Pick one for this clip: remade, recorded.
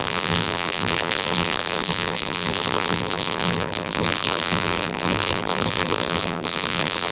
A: remade